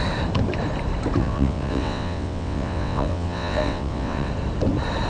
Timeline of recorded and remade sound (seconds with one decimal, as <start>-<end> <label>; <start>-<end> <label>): 0.0-1.2 recorded; 1.2-4.3 remade; 4.3-5.1 recorded